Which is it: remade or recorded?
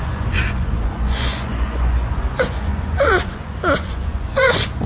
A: remade